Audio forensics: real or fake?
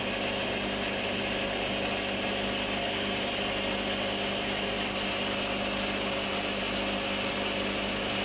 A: real